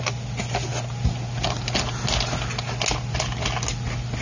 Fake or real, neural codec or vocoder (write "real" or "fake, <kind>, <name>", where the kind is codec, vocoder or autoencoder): real